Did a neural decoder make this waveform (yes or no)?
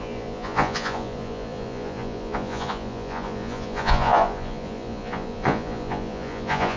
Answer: yes